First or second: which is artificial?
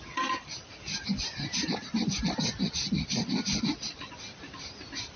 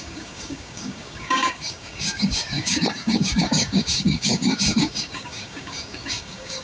second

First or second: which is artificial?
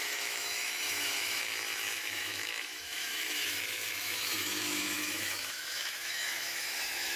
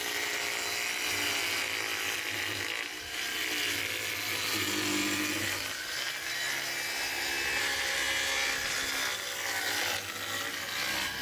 first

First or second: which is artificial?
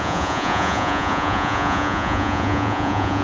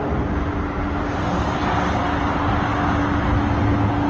first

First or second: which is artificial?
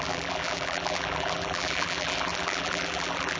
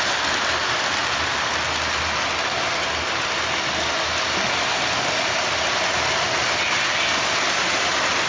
first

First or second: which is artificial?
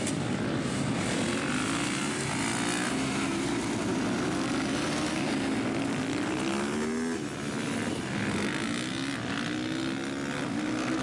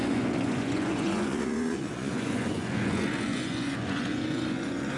second